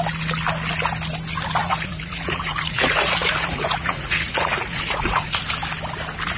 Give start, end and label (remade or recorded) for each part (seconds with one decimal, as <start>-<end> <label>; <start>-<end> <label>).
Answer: 0.0-1.6 recorded; 1.6-5.4 remade; 5.4-6.4 recorded